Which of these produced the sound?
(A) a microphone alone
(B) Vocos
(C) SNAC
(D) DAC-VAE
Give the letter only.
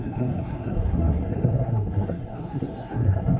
C